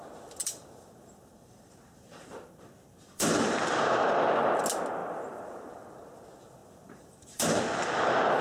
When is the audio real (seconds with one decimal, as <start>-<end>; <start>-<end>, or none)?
0.0-0.4; 4.6-5.0; 5.6-6.6; 7.6-8.4